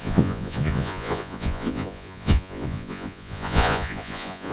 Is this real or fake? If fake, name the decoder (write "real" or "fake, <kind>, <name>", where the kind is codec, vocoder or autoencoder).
fake, vocoder, Vocos